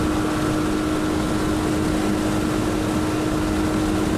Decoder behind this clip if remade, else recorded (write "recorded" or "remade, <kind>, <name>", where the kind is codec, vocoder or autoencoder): recorded